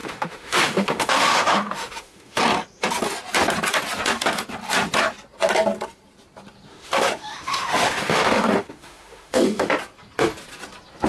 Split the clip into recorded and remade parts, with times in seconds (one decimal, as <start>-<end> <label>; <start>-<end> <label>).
0.0-2.4 remade; 2.4-6.7 recorded; 6.7-9.7 remade; 9.7-11.1 recorded